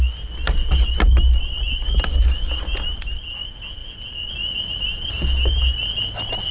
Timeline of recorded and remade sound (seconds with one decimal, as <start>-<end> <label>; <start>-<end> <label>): 0.0-6.5 recorded